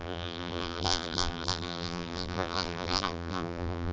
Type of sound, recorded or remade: remade